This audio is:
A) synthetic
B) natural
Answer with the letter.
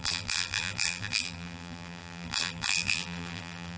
A